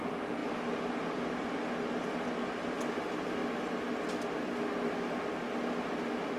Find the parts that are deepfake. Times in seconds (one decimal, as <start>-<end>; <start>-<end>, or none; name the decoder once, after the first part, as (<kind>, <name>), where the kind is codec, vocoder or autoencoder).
none

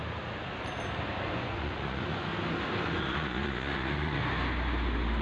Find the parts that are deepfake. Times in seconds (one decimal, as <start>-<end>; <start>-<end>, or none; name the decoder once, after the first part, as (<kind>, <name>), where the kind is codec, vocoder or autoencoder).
1.2-2.3 (vocoder, Vocos); 2.8-4.2

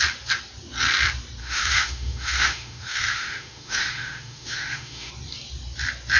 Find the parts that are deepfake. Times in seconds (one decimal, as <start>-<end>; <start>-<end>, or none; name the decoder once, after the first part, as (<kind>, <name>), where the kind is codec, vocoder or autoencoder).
1.4-5.1 (autoencoder, DAC-VAE)

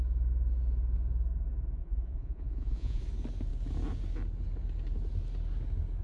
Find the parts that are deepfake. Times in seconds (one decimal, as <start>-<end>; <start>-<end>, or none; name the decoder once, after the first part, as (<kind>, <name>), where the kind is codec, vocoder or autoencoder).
1.8-3.0 (vocoder, Vocos)